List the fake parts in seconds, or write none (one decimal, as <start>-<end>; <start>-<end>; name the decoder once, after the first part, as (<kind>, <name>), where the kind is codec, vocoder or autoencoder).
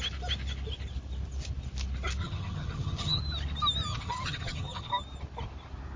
2.2-3.2 (vocoder, HiFi-GAN); 3.9-4.9